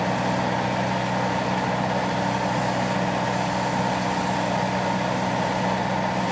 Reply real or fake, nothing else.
real